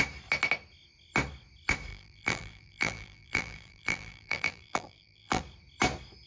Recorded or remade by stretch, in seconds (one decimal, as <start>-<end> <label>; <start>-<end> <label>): 0.0-1.9 recorded; 1.9-5.4 remade; 5.4-6.3 recorded